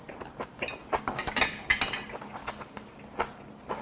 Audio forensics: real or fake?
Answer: real